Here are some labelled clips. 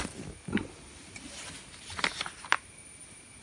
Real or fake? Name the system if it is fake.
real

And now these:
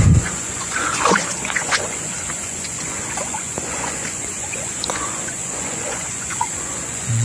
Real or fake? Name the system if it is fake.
fake, vocoder, Vocos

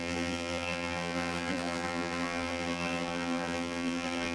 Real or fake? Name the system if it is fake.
fake, vocoder, BigVGAN v2